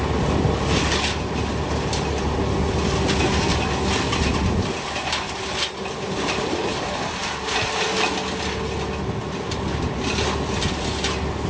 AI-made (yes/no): no